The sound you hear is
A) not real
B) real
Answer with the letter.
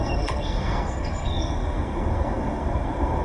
A